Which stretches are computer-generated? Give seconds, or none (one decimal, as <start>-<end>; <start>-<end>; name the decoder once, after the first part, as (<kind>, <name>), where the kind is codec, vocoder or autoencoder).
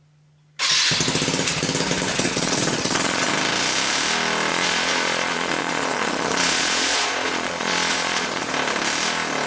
2.1-3.3 (vocoder, Vocos); 4.5-8.5